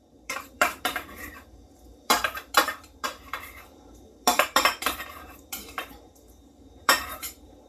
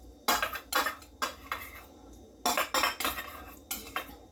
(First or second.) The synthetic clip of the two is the first